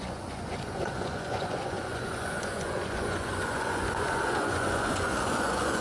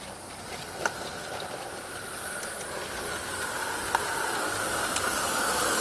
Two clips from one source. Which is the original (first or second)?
second